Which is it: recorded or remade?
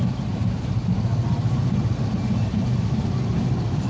recorded